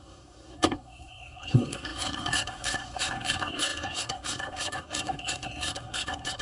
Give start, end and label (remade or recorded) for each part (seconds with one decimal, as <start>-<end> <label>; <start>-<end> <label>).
0.0-6.4 remade